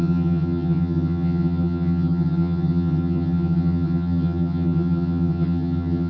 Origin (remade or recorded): remade